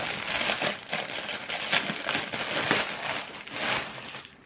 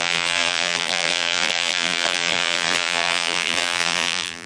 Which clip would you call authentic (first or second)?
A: first